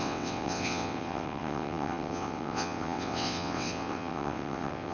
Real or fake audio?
fake